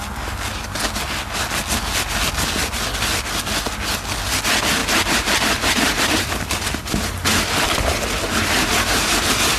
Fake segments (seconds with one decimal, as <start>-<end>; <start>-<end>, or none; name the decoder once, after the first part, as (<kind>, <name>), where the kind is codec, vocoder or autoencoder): 4.8-9.2 (vocoder, BigVGAN v2)